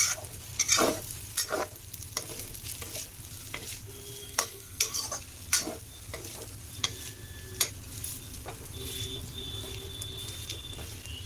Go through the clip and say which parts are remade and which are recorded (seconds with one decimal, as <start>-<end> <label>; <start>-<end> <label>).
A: 0.0-4.2 recorded; 4.2-5.0 remade; 5.0-11.3 recorded